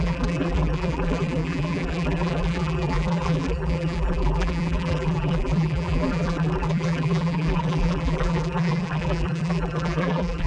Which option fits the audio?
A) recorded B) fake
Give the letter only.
B